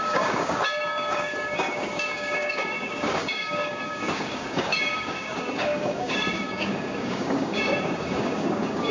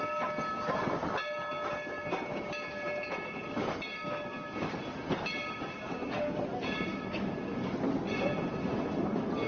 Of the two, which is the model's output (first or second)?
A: first